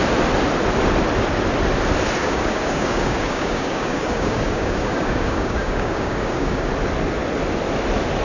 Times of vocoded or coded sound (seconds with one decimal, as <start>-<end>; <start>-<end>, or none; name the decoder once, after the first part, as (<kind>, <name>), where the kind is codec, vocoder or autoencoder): 2.2-6.7 (codec, DAC)